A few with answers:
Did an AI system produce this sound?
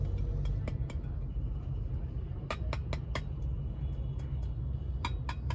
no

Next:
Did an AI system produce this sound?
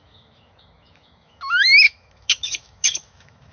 yes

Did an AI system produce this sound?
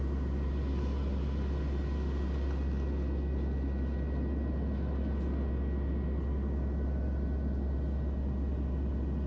no